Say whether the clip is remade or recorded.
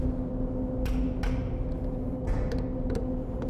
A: recorded